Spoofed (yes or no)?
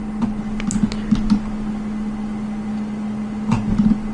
no